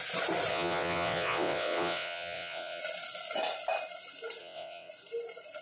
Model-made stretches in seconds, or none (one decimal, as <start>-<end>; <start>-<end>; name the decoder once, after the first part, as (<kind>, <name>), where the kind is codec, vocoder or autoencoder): 0.5-2.8 (vocoder, WaveNeXt); 4.4-4.9